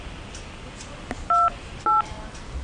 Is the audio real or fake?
real